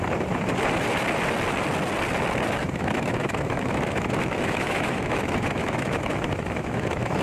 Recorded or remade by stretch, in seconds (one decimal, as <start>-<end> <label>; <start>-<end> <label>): 0.0-2.6 recorded; 2.6-7.2 remade